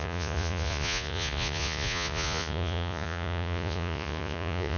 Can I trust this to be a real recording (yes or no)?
no